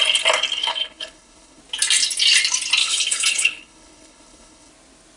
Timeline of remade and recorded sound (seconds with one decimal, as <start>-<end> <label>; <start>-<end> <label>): 0.0-0.6 recorded; 0.6-1.6 remade; 1.6-2.8 recorded; 2.8-4.7 remade; 4.7-5.2 recorded